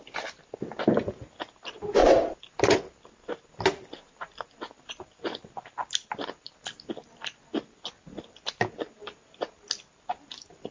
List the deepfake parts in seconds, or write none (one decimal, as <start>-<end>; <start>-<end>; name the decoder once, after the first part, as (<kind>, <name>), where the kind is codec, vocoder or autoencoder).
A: none

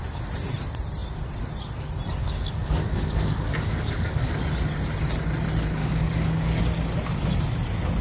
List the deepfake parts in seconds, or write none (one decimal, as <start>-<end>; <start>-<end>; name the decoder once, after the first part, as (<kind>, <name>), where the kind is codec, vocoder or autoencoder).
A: 2.2-4.3 (codec, DAC); 5.8-6.6